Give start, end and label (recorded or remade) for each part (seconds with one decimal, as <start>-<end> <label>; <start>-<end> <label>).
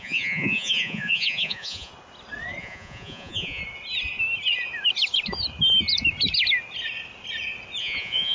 0.0-1.9 remade; 1.9-2.6 recorded; 2.6-3.6 remade; 3.6-7.8 recorded; 7.8-8.3 remade